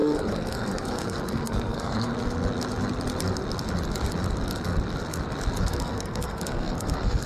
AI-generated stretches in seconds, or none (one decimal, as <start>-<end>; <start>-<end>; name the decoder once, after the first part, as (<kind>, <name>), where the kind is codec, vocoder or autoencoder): 0.0-2.1 (codec, SNAC); 5.6-7.3